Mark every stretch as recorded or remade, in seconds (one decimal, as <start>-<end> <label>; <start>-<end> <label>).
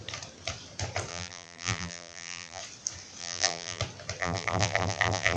0.0-1.1 recorded; 1.1-2.6 remade; 2.6-3.2 recorded; 3.2-3.8 remade; 3.8-4.2 recorded; 4.2-5.4 remade